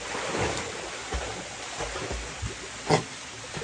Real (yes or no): yes